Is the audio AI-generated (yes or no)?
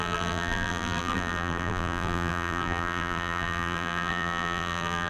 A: yes